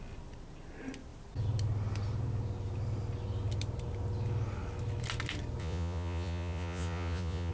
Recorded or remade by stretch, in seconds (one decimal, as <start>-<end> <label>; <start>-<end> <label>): 0.0-5.6 recorded; 5.6-7.5 remade